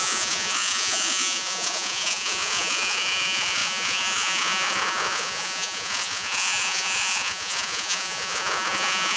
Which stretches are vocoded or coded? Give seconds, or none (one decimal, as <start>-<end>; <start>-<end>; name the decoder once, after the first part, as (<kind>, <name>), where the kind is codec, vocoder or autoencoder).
0.0-9.2 (vocoder, Vocos)